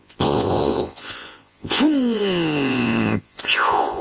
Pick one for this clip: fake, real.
fake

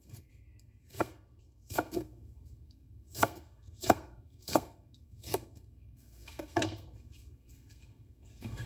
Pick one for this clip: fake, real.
fake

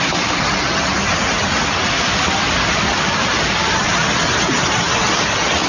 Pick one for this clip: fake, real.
fake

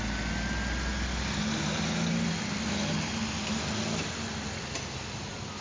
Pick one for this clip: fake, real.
real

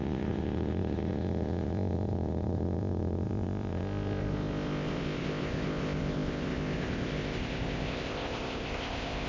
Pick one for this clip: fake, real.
fake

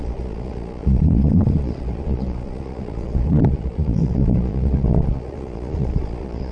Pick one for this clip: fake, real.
fake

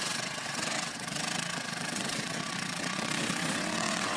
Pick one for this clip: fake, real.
fake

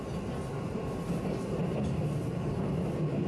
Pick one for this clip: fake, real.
real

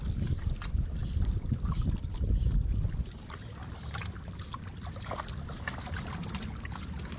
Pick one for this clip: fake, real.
real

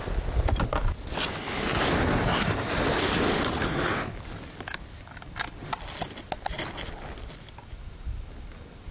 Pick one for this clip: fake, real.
real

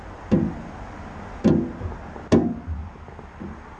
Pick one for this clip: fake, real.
real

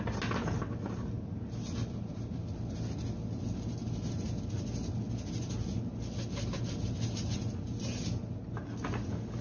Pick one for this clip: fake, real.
real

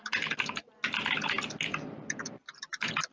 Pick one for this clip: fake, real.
real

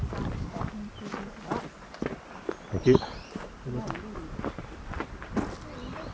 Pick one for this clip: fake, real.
real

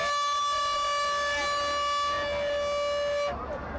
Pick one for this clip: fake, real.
real